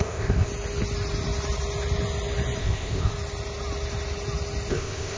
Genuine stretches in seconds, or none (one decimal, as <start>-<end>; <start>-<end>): 0.5-2.6; 3.1-4.7